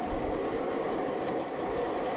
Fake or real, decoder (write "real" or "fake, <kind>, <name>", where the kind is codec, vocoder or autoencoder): real